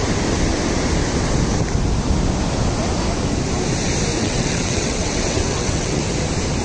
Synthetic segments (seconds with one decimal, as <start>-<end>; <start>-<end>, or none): 4.2-6.0